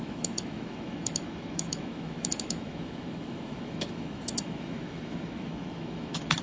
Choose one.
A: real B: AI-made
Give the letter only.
B